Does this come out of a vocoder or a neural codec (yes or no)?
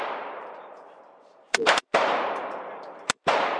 yes